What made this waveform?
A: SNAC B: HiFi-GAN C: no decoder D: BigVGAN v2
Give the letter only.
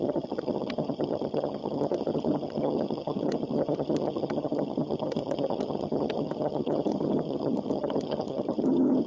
B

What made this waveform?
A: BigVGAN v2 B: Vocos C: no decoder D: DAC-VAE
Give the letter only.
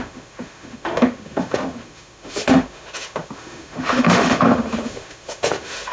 D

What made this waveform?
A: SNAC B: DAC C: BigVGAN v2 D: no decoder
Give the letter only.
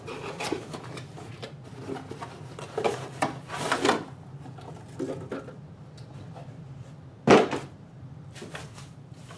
C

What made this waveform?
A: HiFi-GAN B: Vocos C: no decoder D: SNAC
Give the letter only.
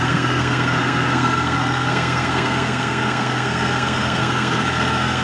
D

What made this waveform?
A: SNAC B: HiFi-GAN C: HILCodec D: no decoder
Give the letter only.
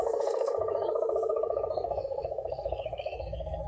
A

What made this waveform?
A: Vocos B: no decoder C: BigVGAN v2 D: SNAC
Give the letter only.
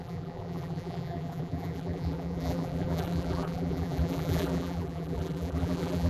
C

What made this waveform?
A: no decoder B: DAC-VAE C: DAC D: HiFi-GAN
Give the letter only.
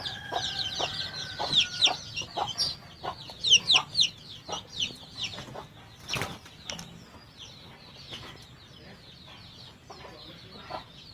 A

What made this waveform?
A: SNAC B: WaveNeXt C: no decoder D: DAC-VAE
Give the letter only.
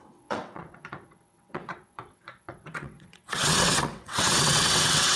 B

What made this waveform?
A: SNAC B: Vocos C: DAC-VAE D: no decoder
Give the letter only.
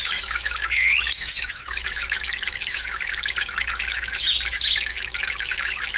C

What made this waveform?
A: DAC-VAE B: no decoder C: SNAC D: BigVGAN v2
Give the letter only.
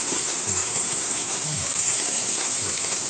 C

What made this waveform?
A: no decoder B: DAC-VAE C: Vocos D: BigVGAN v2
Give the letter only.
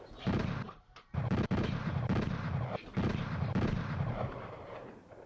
D